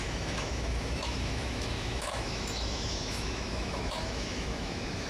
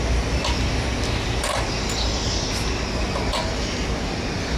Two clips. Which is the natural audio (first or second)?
second